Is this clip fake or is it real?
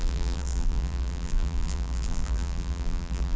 fake